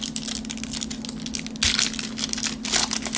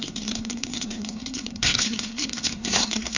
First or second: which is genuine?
first